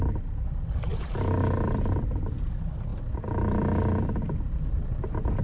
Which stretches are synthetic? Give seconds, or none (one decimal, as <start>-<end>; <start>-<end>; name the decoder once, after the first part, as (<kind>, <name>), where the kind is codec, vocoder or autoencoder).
none